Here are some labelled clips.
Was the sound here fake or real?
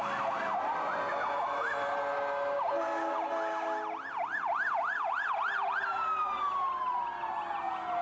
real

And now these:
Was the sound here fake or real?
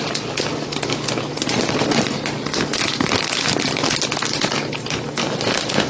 real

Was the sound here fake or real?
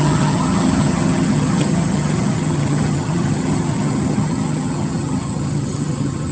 fake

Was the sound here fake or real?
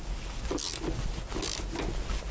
real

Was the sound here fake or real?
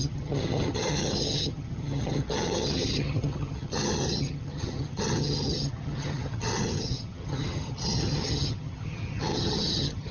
fake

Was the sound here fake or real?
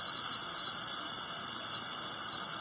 real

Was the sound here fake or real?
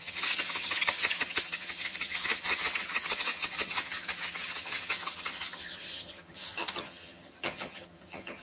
fake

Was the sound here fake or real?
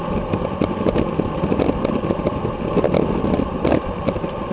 real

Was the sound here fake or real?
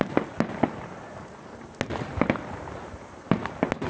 real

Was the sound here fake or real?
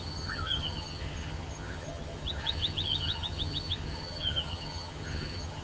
fake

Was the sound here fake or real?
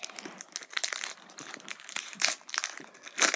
real